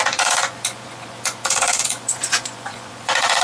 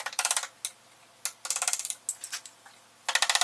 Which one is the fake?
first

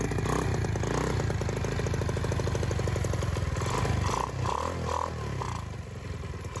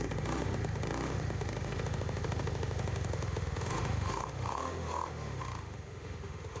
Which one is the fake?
second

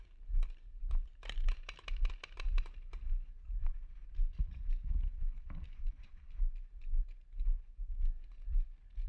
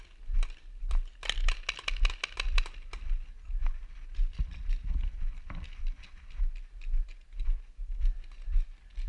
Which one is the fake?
first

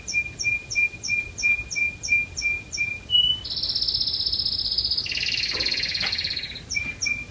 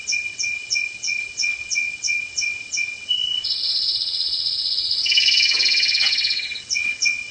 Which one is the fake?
second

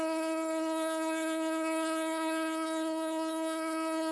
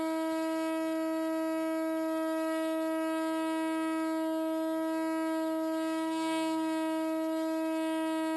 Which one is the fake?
first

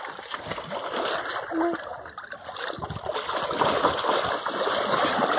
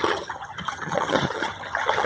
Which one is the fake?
second